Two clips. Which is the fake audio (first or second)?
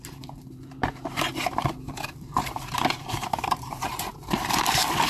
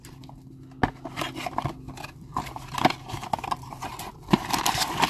first